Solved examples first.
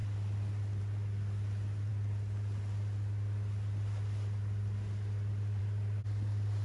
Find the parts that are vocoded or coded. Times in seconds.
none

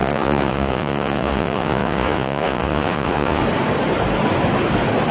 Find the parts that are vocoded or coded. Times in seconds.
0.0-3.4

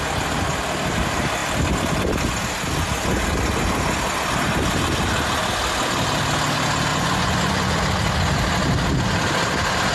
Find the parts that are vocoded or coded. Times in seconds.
6.9-7.8